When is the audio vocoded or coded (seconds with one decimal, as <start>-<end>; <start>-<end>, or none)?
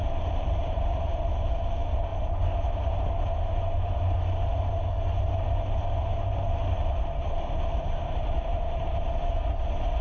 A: none